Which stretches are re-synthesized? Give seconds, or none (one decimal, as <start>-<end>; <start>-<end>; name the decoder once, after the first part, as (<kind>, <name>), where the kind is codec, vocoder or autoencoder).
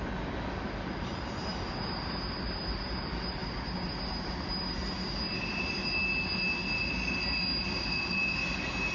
none